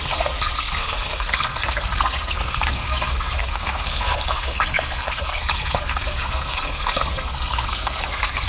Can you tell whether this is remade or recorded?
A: remade